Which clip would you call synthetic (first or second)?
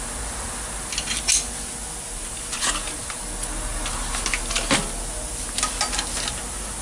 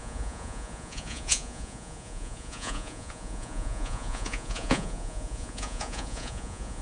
second